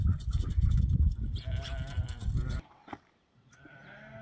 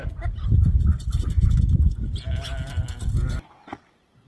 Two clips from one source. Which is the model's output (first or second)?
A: first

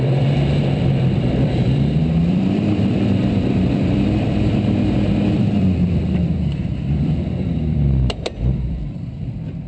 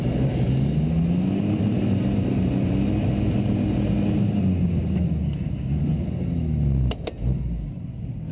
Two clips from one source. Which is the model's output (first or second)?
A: first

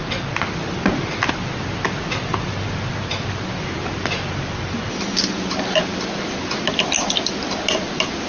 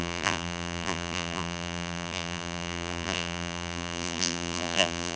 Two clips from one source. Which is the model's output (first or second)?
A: second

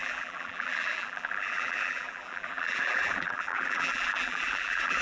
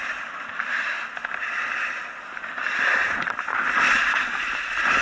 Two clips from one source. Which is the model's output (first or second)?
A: first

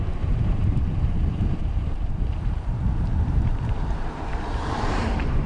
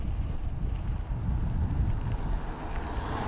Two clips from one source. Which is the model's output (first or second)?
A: first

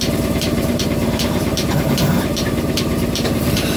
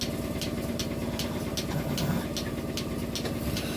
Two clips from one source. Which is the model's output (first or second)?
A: first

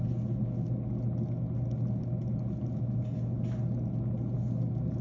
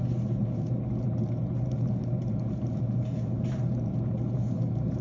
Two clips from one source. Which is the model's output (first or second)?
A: second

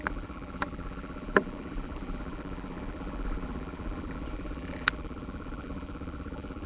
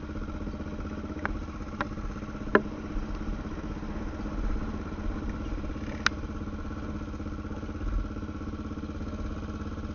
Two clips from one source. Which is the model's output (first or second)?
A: first